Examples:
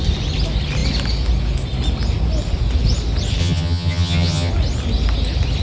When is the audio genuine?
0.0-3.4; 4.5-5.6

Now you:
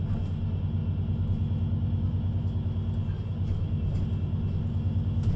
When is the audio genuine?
0.0-5.4

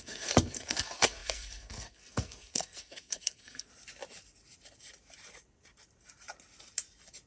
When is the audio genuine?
3.7-7.3

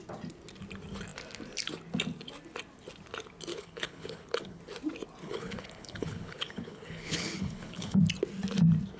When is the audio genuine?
0.0-3.5; 4.6-5.2; 8.0-9.0

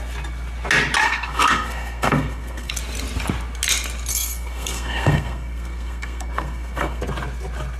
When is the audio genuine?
0.0-1.0; 2.7-4.1; 7.0-7.8

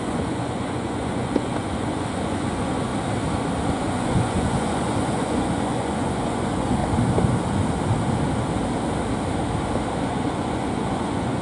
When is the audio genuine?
2.9-3.7; 6.8-10.0

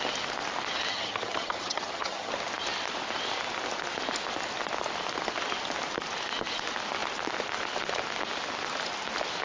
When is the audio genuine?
0.0-0.9; 2.3-9.4

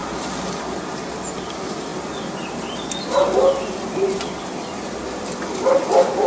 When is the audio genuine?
0.0-1.9; 5.7-6.3